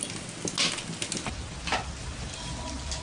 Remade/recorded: recorded